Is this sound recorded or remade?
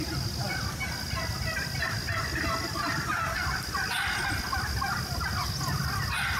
recorded